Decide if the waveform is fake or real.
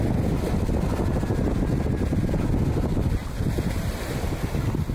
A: real